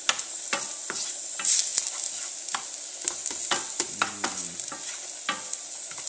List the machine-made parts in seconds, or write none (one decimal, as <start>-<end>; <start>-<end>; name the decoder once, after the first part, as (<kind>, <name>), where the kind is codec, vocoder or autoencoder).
none